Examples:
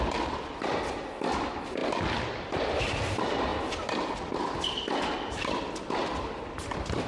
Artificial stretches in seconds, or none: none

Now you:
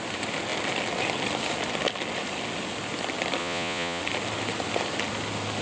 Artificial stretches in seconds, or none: 3.4-4.0 (vocoder, Vocos)